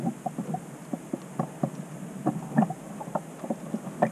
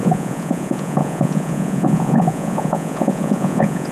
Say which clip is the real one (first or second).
first